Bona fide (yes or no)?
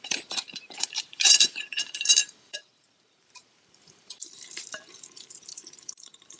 no